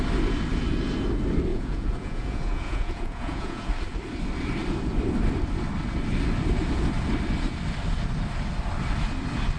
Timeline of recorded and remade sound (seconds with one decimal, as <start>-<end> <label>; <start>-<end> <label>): 0.0-1.5 recorded; 1.5-3.7 remade; 3.7-9.6 recorded